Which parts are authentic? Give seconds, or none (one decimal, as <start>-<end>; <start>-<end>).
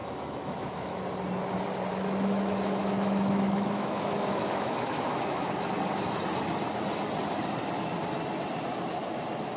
1.0-1.9; 5.7-9.6